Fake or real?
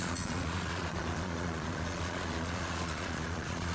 fake